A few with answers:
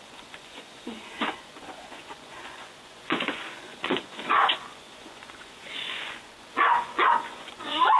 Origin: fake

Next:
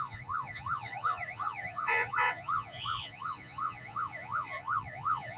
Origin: fake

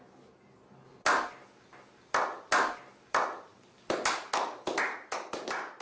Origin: real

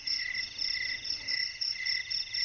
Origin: fake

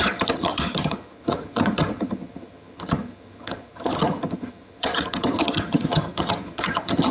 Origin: fake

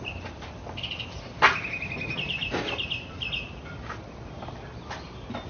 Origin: real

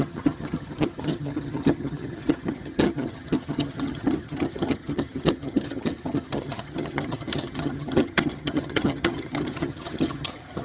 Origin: fake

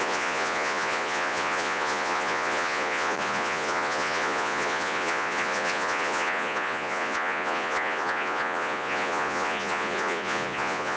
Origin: fake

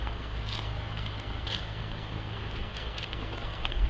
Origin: fake